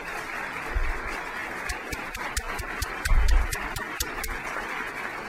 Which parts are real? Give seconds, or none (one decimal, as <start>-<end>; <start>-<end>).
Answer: 0.0-5.3